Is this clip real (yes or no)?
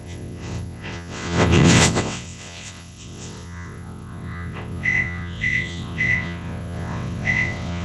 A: no